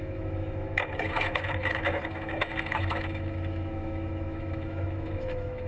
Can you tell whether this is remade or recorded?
remade